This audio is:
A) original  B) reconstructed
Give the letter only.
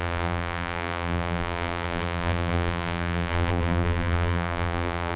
B